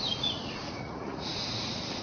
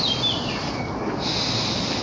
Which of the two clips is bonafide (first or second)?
second